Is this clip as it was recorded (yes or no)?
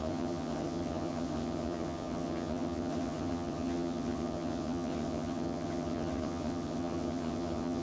no